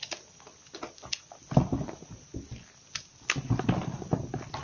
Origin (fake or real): real